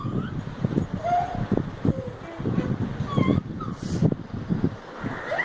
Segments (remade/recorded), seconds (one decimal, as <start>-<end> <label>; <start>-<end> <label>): 0.0-5.4 recorded